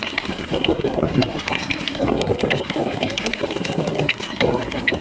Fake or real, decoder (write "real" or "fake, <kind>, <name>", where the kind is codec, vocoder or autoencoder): fake, codec, SNAC